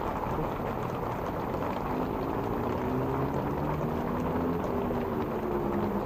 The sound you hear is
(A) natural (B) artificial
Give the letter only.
A